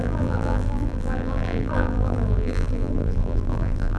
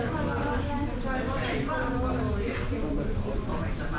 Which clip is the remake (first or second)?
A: first